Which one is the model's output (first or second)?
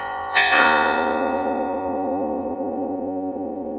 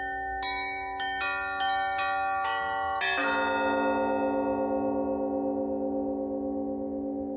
first